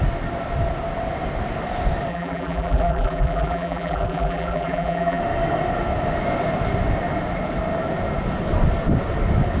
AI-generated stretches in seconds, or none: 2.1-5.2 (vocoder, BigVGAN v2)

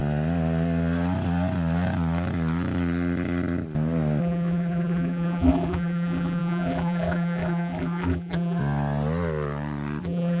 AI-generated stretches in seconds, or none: 4.2-8.6 (vocoder, BigVGAN v2); 10.0-10.4

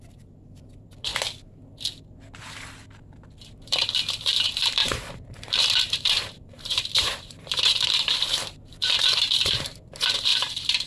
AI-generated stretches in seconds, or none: 0.0-1.1 (vocoder, BigVGAN v2); 3.5-10.9

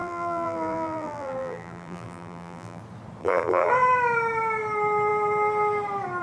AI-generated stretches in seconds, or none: 0.0-2.8 (vocoder, BigVGAN v2); 3.2-3.7

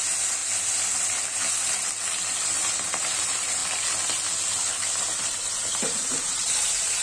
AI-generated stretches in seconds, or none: 0.0-0.4 (vocoder, BigVGAN v2); 3.0-3.6; 5.0-7.0